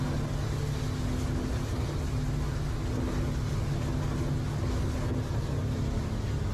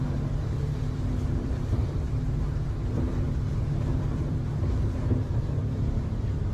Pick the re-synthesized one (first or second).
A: second